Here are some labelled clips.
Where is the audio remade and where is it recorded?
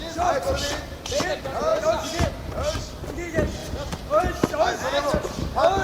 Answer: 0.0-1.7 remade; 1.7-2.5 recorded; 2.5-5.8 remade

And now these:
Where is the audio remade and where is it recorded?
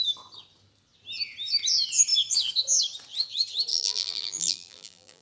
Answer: 0.0-3.7 recorded; 3.7-5.2 remade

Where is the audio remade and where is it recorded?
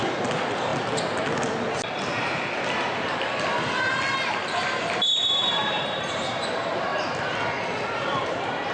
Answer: 0.0-0.7 remade; 0.7-5.3 recorded; 5.3-6.9 remade; 6.9-7.9 recorded; 7.9-8.7 remade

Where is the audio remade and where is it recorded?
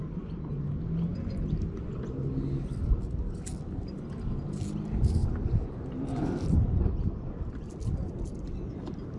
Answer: 0.0-5.2 recorded; 5.2-7.1 remade; 7.1-9.2 recorded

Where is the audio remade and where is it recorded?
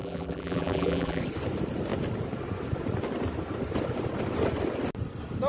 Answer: 0.0-1.2 remade; 1.2-5.5 recorded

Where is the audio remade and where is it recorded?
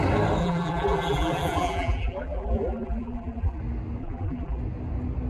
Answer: 0.0-0.4 recorded; 0.4-3.6 remade; 3.6-4.0 recorded; 4.0-4.6 remade; 4.6-5.3 recorded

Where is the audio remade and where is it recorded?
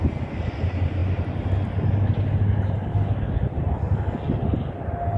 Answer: 0.0-5.2 recorded